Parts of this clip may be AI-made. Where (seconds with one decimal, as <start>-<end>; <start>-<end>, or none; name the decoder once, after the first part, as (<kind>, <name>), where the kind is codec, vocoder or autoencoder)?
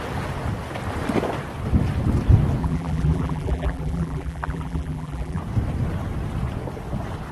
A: 2.6-5.4 (vocoder, BigVGAN v2)